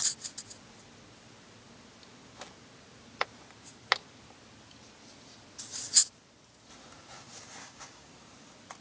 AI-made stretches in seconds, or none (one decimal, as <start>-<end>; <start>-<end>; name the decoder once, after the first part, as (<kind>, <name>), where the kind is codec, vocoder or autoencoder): 7.6-8.1 (codec, DAC)